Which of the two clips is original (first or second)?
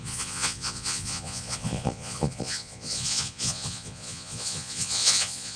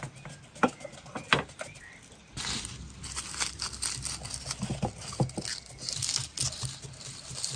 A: second